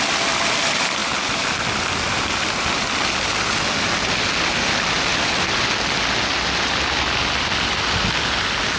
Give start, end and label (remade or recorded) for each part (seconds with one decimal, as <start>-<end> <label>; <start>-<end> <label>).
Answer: 0.0-8.8 recorded